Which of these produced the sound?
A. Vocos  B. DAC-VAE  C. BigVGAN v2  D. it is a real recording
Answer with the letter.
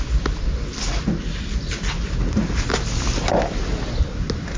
D